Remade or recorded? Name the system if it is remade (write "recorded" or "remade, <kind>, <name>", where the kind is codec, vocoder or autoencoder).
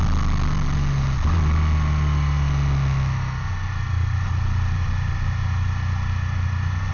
recorded